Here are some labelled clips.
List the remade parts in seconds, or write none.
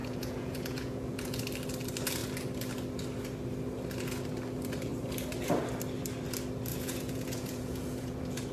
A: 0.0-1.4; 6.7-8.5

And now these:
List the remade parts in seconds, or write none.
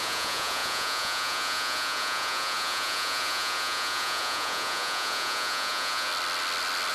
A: 0.0-6.1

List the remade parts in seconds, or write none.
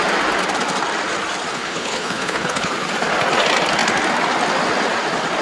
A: 1.5-2.7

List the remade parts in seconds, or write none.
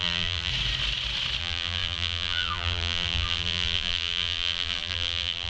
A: 0.0-0.5; 1.4-5.5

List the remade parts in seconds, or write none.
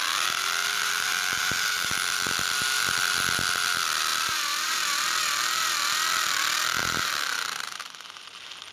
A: 0.6-1.9; 4.1-5.2; 6.8-7.8